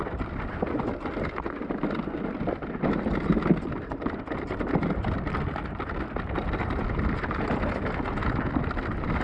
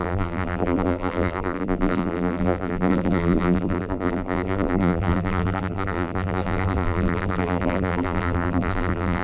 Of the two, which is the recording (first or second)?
first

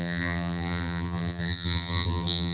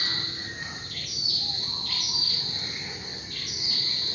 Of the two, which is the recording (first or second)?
second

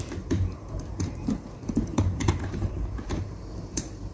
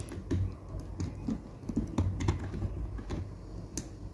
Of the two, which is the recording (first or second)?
second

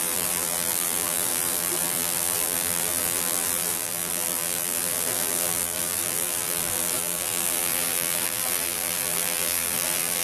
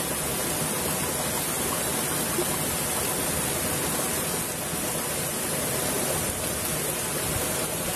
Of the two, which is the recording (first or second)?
second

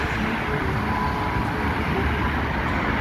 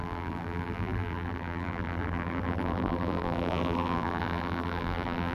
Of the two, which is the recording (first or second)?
first